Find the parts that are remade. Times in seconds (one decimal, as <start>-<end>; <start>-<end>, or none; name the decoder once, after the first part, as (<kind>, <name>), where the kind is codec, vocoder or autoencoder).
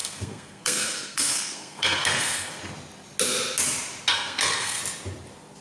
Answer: 0.0-2.6 (codec, SNAC); 4.1-4.8